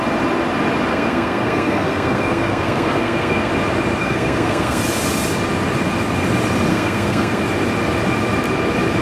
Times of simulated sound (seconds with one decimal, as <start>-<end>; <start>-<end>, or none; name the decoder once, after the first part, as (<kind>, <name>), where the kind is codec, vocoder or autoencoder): 0.9-3.5 (codec, SNAC); 4.0-4.8; 6.7-7.4